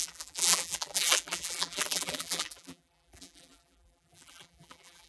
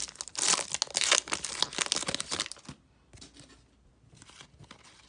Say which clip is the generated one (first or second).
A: first